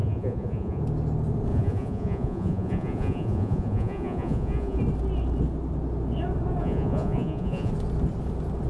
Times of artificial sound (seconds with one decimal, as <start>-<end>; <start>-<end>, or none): 0.0-0.8; 1.5-4.8; 6.6-7.7